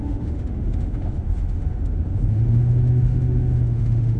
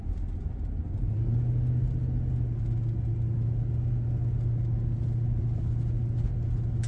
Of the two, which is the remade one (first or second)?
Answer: first